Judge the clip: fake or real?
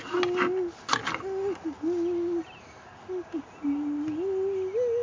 real